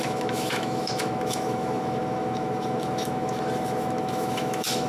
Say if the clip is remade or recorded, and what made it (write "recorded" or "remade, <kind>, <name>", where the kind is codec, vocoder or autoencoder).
remade, autoencoder, DAC-VAE